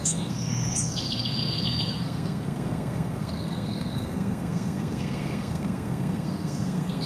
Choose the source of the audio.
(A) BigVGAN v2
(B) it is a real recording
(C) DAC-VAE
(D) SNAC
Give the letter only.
D